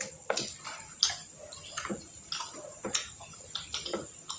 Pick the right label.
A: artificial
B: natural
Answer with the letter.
B